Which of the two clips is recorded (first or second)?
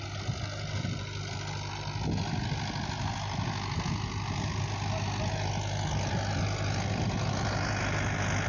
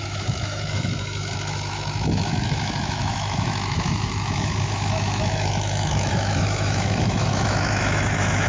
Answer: first